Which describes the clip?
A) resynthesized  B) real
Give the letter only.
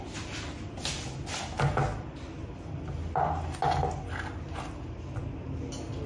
B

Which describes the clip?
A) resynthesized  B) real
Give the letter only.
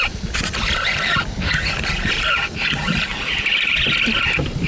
B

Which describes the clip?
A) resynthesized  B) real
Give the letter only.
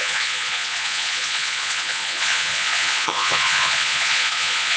A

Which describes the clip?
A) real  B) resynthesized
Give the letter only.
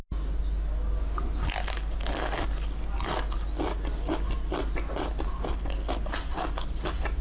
A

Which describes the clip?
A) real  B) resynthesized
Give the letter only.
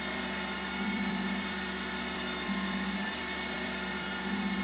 B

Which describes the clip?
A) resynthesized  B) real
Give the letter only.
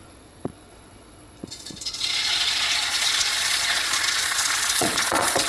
A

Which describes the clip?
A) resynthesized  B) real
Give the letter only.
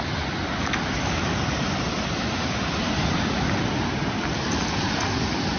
B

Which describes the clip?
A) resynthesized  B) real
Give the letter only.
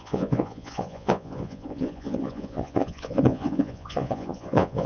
A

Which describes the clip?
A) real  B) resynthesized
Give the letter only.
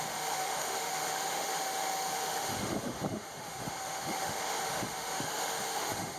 B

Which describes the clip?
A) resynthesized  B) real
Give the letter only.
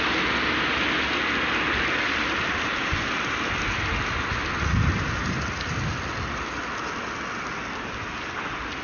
B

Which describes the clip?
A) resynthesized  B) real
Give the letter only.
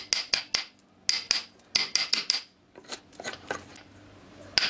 B